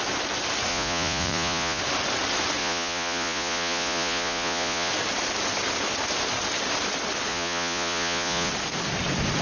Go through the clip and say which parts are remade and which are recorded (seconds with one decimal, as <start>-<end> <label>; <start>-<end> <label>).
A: 0.0-0.7 recorded; 0.7-1.8 remade; 1.8-2.6 recorded; 2.6-4.9 remade; 4.9-7.3 recorded; 7.3-8.5 remade; 8.5-9.4 recorded